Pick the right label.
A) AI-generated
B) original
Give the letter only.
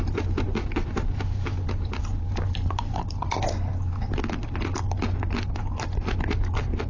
B